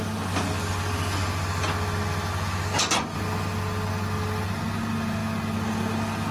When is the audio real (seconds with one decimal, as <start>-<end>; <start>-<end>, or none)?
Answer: 0.0-6.3